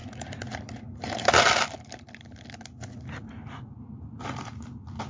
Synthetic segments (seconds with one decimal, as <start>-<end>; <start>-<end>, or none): none